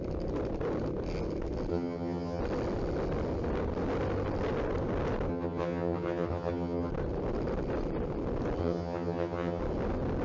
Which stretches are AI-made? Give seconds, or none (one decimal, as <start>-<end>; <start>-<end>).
1.7-2.4; 5.3-6.9; 8.6-9.6